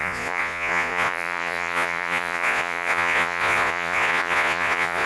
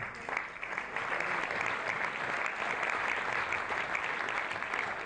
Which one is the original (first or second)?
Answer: second